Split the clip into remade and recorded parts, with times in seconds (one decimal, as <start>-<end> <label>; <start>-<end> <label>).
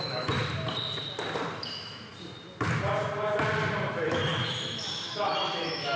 0.0-0.4 remade; 0.4-1.6 recorded; 1.6-2.1 remade; 2.1-3.9 recorded; 3.9-6.0 remade